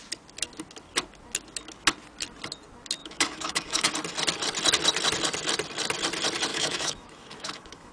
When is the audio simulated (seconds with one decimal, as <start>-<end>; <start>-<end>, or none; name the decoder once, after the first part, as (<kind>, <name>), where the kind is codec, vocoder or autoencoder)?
3.0-3.9 (autoencoder, DAC-VAE); 6.5-7.9